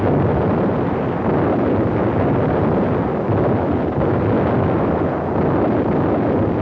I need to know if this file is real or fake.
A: real